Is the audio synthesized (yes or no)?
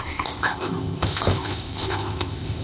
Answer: yes